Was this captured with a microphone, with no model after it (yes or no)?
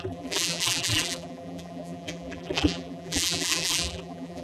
no